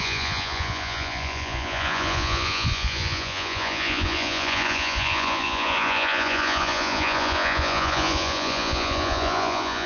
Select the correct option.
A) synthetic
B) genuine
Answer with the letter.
A